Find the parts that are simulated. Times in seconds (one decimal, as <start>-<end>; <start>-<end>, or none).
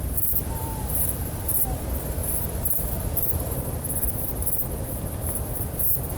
0.0-6.2